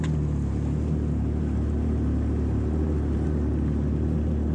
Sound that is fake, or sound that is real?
real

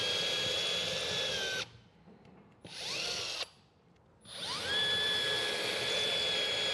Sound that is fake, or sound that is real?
real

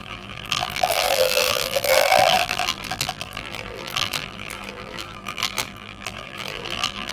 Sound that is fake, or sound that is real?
fake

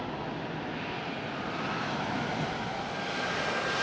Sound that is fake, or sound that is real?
real